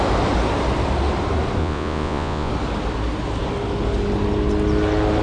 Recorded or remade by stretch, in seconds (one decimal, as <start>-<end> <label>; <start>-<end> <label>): 0.0-1.6 recorded; 1.6-2.5 remade; 2.5-5.2 recorded